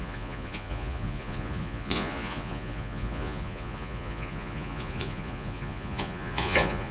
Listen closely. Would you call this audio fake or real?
fake